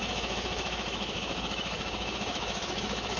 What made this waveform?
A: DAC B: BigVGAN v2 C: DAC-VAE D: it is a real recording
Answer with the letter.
C